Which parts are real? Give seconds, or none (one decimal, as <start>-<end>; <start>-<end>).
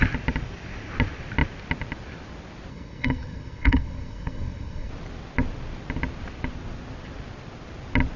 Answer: 0.0-2.7; 4.9-8.2